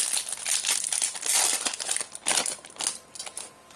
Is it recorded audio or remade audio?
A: recorded